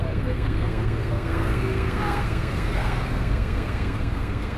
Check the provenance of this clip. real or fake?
fake